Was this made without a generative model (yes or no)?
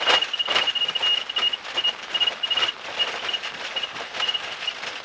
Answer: yes